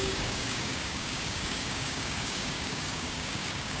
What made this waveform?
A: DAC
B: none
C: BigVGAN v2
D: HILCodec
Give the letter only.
A